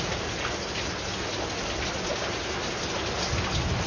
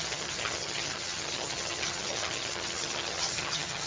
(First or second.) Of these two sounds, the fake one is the second